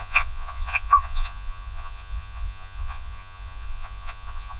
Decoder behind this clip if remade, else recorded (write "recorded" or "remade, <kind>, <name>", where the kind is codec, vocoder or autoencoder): remade, vocoder, Vocos